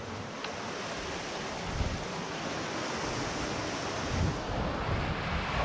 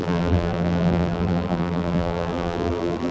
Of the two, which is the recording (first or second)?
first